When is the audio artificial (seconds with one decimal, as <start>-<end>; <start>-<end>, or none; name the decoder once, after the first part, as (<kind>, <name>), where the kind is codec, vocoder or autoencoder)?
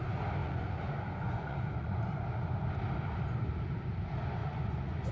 0.4-2.0 (vocoder, Vocos); 4.4-5.1